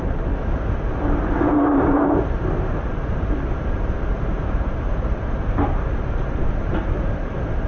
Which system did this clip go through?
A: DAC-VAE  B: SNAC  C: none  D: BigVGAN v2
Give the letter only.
D